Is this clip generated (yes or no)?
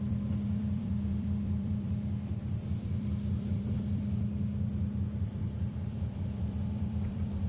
yes